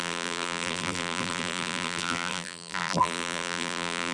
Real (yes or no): no